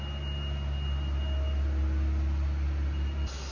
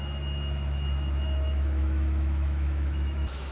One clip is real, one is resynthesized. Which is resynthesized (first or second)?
second